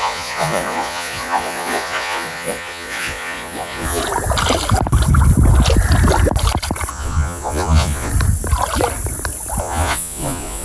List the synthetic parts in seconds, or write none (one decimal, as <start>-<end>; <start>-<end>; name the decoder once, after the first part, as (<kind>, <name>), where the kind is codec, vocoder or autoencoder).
0.0-4.0 (vocoder, Vocos); 6.9-8.1; 9.6-10.6